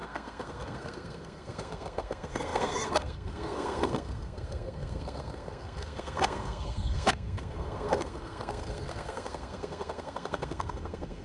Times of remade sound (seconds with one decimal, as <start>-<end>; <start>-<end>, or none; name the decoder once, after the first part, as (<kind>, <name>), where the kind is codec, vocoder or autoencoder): 0.0-11.2 (codec, SNAC)